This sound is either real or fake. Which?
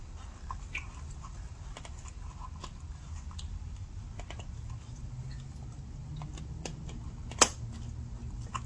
real